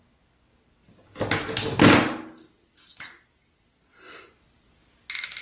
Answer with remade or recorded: recorded